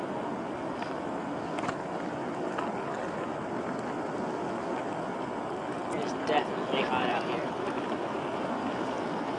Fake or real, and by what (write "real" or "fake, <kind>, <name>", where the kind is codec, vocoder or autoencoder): real